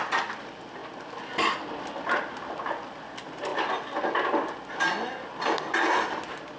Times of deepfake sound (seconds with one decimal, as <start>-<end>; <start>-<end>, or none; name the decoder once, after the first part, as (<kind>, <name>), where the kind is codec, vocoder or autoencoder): none